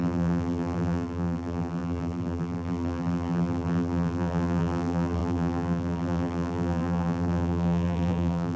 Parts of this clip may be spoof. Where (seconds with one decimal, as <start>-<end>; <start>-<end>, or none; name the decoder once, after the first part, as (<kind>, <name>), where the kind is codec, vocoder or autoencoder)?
0.0-8.6 (vocoder, BigVGAN v2)